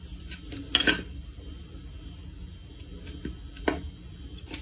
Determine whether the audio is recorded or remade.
recorded